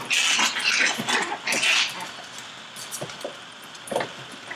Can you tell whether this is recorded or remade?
recorded